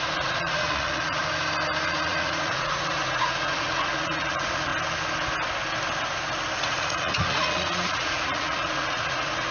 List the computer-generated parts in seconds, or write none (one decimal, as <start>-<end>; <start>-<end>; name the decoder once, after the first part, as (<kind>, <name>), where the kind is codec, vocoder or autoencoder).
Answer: 0.0-1.2 (vocoder, Vocos); 1.8-4.7; 6.6-9.5